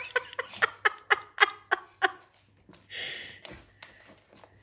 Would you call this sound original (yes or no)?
yes